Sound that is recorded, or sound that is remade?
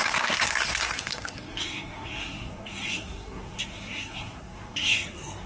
remade